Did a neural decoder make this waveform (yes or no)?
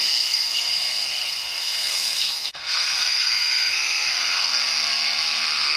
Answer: yes